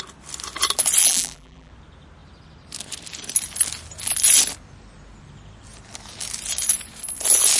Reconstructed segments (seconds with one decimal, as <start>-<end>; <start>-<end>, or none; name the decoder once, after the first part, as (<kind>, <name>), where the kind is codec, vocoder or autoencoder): 1.0-1.7 (vocoder, BigVGAN v2)